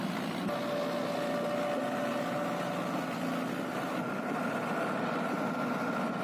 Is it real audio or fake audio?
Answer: real